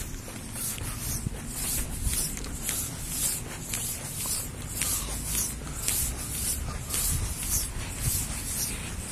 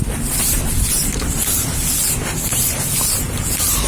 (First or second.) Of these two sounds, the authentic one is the first